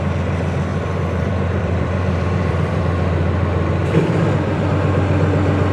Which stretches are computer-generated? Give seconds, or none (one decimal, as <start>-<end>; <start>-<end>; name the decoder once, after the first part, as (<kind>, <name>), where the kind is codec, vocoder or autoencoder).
0.7-2.8 (vocoder, BigVGAN v2); 3.8-4.7